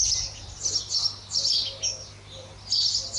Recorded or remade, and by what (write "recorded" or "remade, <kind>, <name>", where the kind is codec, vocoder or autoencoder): recorded